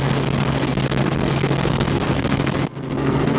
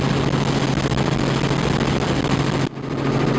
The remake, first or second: first